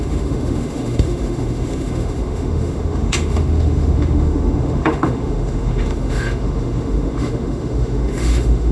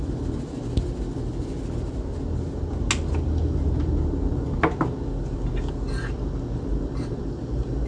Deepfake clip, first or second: first